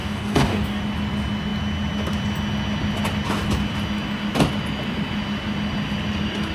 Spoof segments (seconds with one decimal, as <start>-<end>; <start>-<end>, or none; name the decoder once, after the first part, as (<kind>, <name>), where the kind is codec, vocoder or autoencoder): 0.0-0.8 (codec, DAC)